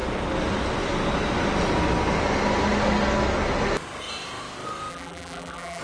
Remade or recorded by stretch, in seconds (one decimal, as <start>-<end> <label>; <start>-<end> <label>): 0.0-4.9 recorded; 4.9-5.8 remade